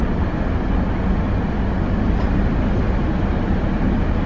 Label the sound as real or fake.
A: real